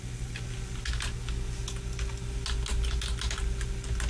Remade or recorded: recorded